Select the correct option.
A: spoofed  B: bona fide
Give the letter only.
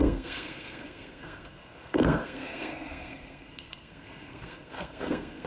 A